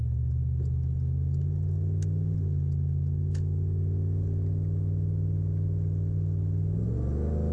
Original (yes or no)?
yes